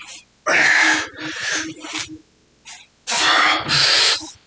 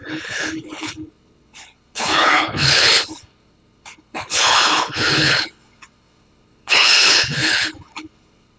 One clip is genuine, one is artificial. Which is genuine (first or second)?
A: first